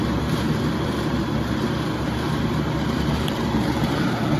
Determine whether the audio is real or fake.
fake